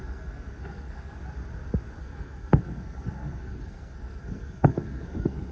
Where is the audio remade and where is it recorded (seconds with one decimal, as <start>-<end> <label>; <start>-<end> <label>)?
0.0-1.2 remade; 1.2-2.0 recorded; 2.0-5.5 remade